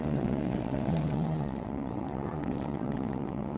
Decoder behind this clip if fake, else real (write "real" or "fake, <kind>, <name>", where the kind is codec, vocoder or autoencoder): fake, vocoder, WaveNeXt